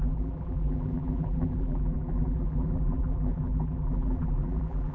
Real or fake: fake